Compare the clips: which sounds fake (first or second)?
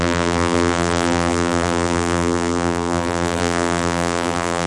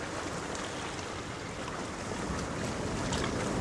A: first